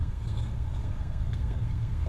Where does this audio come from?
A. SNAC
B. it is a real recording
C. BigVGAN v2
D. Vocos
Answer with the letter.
A